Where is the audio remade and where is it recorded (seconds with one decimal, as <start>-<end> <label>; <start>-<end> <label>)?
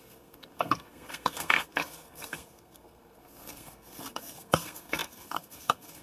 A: 0.0-6.0 remade